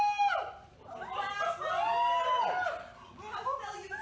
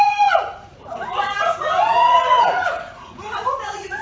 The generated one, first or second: second